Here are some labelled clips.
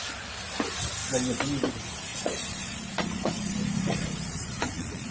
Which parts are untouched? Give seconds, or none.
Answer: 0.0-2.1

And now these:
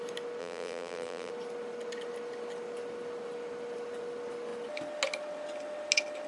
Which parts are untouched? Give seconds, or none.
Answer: 0.0-0.4; 1.3-6.3